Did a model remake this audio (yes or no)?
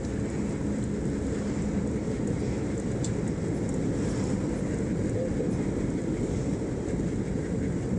no